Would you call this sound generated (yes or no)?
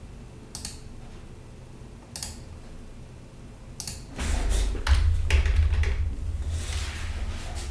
no